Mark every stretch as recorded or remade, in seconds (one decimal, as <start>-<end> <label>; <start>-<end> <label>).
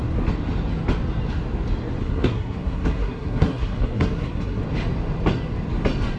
0.0-2.0 recorded; 2.0-4.6 remade; 4.6-6.2 recorded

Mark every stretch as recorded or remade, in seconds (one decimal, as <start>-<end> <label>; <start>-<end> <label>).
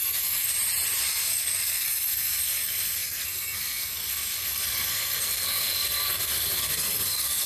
0.0-0.5 remade; 0.5-1.0 recorded; 1.0-7.5 remade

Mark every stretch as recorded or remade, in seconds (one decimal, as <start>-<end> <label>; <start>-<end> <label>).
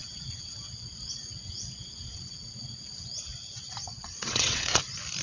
0.0-3.1 remade; 3.1-3.9 recorded; 3.9-4.8 remade; 4.8-5.2 recorded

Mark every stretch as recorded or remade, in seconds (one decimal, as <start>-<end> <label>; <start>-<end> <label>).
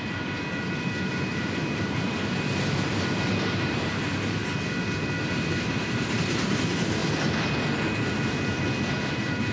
0.0-4.4 remade; 4.4-5.6 recorded; 5.6-7.0 remade; 7.0-9.0 recorded; 9.0-9.5 remade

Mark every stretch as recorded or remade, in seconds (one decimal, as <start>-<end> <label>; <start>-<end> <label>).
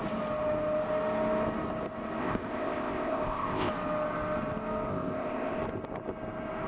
0.0-2.2 recorded; 2.2-3.7 remade; 3.7-4.9 recorded; 4.9-5.6 remade; 5.6-6.7 recorded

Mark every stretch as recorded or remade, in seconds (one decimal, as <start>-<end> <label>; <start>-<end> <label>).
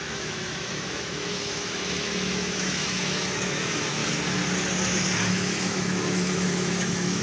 0.0-4.0 remade; 4.0-5.3 recorded; 5.3-7.2 remade